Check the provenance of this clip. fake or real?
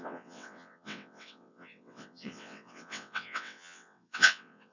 fake